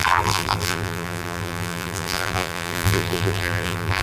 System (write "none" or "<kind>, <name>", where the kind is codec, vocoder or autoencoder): vocoder, BigVGAN v2